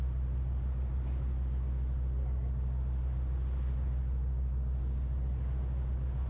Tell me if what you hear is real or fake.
real